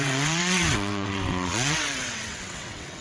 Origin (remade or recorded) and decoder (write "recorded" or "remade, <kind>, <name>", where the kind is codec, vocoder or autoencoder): remade, vocoder, WaveNeXt